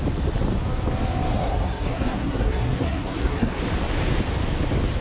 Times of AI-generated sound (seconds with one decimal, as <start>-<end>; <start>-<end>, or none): 1.3-3.6